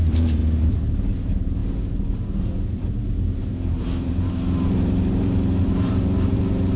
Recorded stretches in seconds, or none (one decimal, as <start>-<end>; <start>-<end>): 0.4-1.1